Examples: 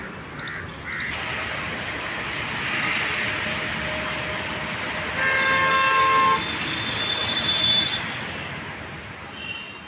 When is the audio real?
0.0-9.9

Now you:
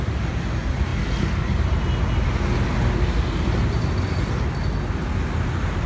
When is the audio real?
0.0-5.9

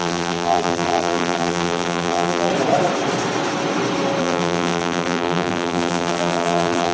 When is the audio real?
2.5-4.2